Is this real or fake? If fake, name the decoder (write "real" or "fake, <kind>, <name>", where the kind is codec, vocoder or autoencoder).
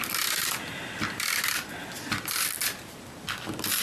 real